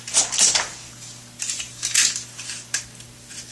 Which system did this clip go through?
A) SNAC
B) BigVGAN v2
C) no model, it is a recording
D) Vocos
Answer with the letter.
C